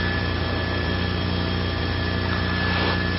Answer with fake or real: real